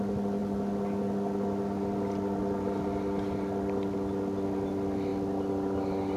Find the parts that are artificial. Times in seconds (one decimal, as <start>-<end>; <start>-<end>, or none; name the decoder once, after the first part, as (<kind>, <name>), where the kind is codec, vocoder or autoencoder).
none